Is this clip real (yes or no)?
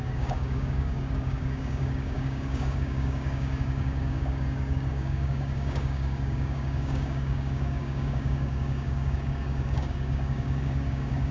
no